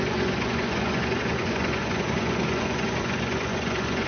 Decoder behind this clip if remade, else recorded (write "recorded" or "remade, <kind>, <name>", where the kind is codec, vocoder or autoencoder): remade, vocoder, Vocos